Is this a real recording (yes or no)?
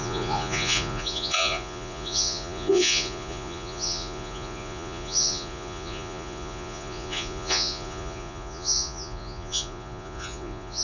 no